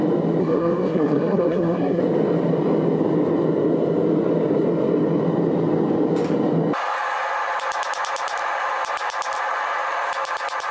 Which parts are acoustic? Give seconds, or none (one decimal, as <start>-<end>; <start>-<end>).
0.0-0.4; 2.0-10.7

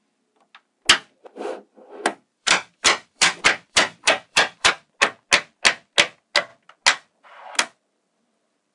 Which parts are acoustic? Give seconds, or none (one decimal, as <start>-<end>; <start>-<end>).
0.0-2.1; 4.7-8.7

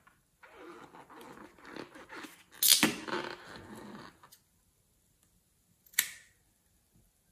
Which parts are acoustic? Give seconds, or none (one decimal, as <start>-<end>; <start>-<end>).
0.0-7.3

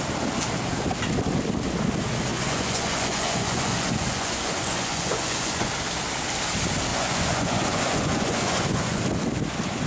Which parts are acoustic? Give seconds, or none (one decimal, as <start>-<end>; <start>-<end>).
0.0-2.3; 5.7-6.9; 9.0-9.9

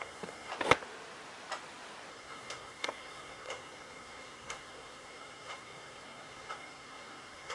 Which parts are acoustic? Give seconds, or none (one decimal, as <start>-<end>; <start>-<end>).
0.5-2.1